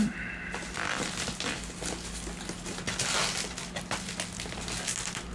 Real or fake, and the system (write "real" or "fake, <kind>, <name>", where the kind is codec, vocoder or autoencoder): real